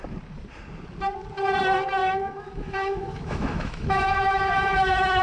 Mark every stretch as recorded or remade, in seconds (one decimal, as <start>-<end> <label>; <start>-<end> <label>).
0.0-2.0 recorded; 2.0-5.2 remade